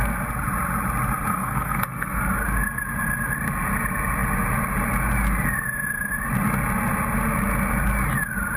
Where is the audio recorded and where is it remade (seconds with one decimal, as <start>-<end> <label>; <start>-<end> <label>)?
0.0-1.3 recorded; 1.3-2.2 remade; 2.2-8.6 recorded

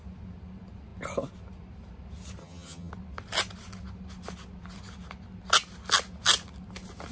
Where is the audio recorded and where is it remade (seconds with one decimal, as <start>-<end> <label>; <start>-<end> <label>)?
0.0-2.4 recorded; 2.4-2.9 remade; 2.9-7.1 recorded

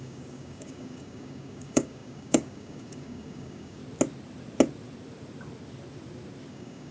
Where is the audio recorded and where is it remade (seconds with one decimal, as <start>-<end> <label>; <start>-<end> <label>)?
0.0-3.8 remade; 3.8-6.5 recorded; 6.5-6.9 remade

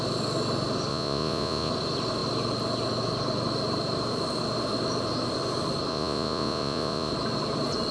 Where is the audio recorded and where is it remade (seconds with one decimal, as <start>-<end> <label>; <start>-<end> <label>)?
0.0-0.9 recorded; 0.9-1.7 remade; 1.7-5.9 recorded; 5.9-7.1 remade; 7.1-7.9 recorded

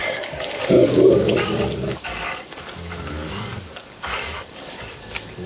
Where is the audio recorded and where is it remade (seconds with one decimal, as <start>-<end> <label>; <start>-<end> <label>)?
0.0-5.5 remade

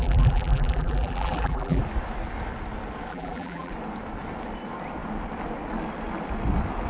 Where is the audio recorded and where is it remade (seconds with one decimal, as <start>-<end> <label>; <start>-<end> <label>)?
0.0-1.8 remade; 1.8-3.1 recorded; 3.1-3.7 remade; 3.7-6.9 recorded

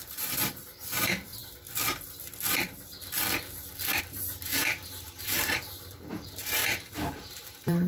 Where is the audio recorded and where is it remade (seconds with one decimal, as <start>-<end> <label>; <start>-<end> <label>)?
0.0-1.3 remade; 1.3-4.0 recorded; 4.0-6.6 remade; 6.6-7.1 recorded; 7.1-7.9 remade